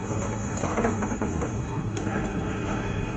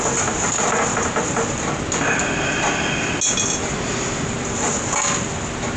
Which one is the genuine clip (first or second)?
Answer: second